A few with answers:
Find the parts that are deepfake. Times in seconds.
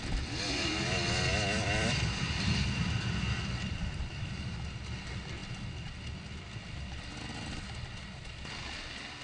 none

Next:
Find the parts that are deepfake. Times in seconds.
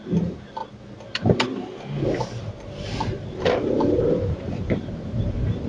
0.0-5.7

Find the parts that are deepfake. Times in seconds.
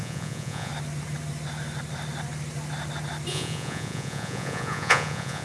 0.0-0.7; 3.3-5.4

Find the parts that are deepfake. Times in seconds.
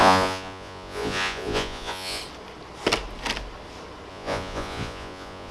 0.0-2.2; 4.1-5.5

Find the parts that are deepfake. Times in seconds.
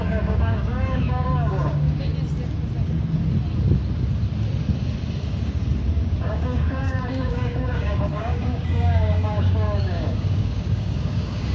0.0-2.1; 6.0-11.5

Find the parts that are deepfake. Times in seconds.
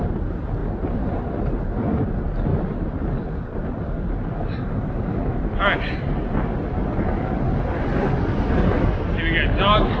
none